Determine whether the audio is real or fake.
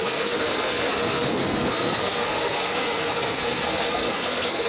fake